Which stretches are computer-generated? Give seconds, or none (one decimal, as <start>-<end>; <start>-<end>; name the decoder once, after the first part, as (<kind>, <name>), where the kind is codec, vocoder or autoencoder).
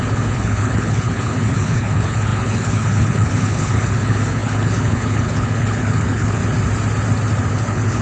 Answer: 0.0-6.4 (codec, HILCodec); 7.5-8.0